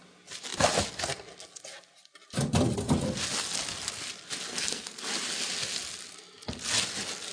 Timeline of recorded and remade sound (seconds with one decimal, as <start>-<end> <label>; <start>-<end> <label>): 0.0-4.5 recorded; 4.5-5.0 remade; 5.0-7.3 recorded